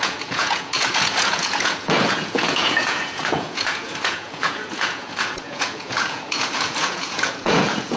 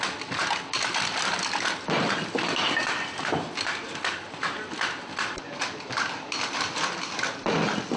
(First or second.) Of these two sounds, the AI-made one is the first